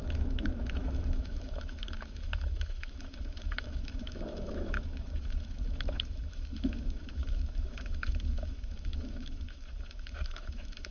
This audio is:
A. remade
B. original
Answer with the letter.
A